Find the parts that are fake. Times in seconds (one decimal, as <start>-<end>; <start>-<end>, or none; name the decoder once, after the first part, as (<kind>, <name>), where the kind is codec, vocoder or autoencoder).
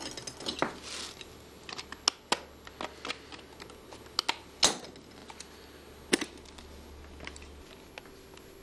none